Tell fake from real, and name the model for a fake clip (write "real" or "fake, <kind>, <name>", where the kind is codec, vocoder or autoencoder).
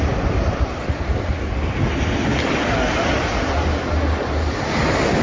real